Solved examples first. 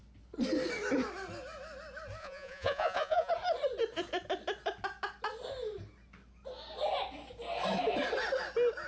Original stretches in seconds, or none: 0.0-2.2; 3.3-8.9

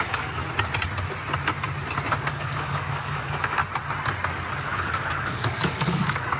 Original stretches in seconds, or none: 0.4-2.3; 3.6-4.6